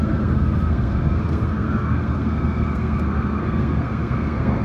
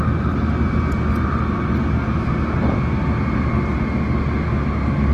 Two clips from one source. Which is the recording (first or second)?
second